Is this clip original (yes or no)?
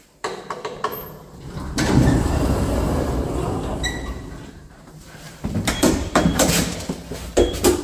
no